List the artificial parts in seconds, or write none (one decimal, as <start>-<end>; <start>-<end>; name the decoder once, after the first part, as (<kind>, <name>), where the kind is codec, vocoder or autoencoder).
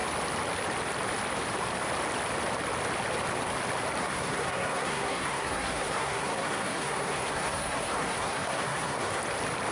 4.0-9.2 (codec, SNAC)